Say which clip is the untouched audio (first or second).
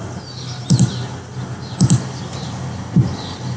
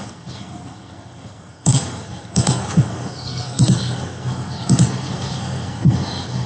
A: first